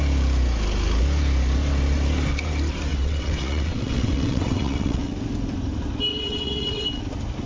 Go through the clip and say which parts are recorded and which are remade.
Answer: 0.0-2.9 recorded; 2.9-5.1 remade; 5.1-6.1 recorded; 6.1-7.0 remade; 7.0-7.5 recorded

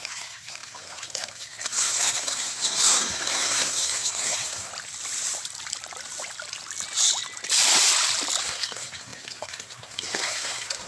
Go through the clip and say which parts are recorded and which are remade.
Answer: 0.0-4.7 remade; 4.7-8.4 recorded; 8.4-10.9 remade

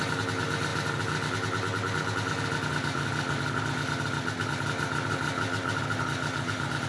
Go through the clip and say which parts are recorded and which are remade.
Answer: 0.0-6.9 recorded

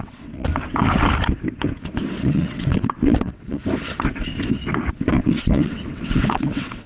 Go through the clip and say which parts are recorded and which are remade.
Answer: 0.0-0.5 remade; 0.5-2.2 recorded; 2.2-3.6 remade; 3.6-5.1 recorded; 5.1-6.9 remade

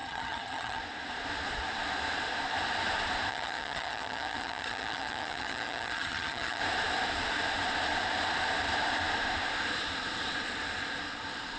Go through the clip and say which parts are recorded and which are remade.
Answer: 0.0-0.8 remade; 0.8-3.3 recorded; 3.3-6.6 remade; 6.6-11.6 recorded

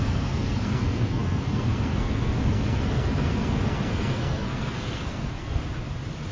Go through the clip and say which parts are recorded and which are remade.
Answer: 0.0-5.6 remade; 5.6-6.3 recorded

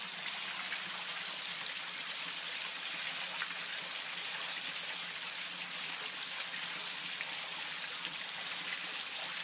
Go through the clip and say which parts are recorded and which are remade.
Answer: 0.0-9.4 recorded